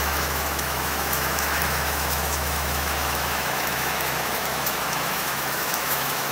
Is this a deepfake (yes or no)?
yes